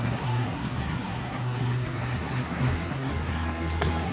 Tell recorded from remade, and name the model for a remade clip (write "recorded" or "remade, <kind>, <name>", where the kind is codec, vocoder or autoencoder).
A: remade, codec, SNAC